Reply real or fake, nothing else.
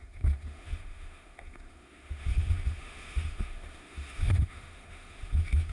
fake